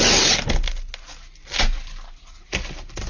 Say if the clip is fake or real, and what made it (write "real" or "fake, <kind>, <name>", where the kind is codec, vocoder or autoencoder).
real